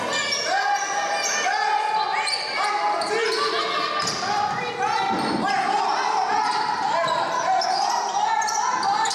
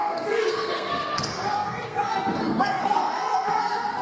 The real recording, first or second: first